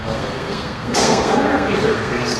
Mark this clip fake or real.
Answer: fake